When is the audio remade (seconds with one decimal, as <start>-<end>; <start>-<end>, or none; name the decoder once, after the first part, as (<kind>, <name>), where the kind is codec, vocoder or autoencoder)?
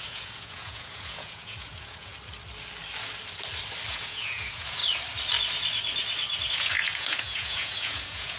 0.0-2.1 (vocoder, Vocos); 3.9-4.8; 6.5-8.4